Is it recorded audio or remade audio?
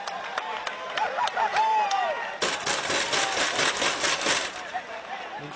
recorded